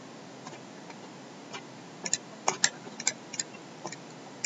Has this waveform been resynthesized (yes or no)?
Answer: no